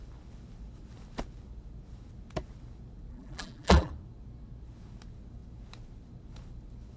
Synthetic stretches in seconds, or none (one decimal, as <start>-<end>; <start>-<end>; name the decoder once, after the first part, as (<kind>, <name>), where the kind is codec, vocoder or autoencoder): 3.1-3.9 (vocoder, BigVGAN v2)